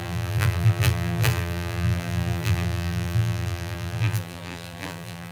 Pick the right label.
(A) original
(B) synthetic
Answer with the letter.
B